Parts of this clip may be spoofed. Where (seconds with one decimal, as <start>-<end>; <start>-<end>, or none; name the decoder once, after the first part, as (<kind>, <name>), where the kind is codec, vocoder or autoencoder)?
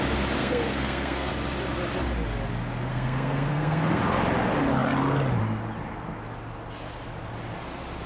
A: 0.4-1.3 (codec, SNAC); 2.9-4.0